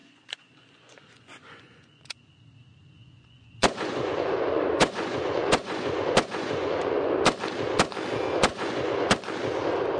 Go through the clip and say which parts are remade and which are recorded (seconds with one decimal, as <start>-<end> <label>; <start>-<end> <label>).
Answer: 0.0-2.2 remade; 2.2-3.0 recorded; 3.0-7.1 remade; 7.1-8.5 recorded; 8.5-9.1 remade; 9.1-10.0 recorded